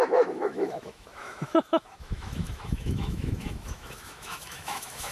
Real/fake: fake